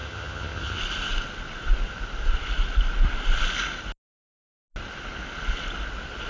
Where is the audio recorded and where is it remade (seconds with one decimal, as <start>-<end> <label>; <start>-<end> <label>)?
0.0-0.8 remade; 0.8-6.3 recorded